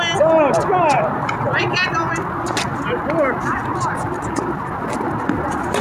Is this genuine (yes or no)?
yes